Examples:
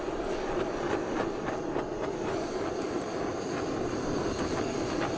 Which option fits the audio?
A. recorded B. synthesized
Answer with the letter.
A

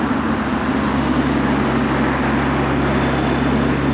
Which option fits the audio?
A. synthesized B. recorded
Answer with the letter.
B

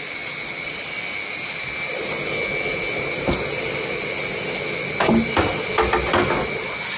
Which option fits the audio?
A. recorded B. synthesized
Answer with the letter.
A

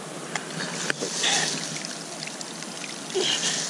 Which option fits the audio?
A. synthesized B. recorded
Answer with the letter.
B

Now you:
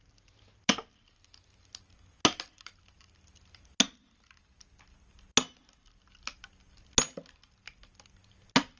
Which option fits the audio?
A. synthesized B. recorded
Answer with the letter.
B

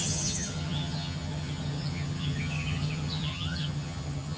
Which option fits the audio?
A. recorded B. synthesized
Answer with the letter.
B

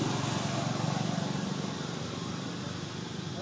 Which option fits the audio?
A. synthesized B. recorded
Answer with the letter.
B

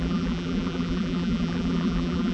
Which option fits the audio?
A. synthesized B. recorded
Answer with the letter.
A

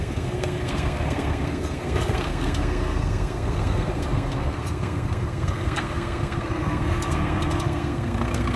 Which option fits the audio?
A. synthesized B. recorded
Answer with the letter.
A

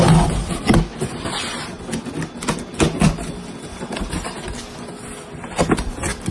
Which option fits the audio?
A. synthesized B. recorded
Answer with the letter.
B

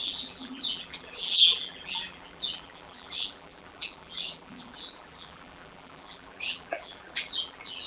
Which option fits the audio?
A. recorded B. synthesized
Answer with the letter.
B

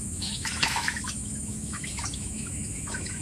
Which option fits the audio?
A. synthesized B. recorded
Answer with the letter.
A